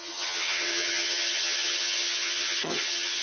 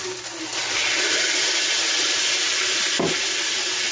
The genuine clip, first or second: second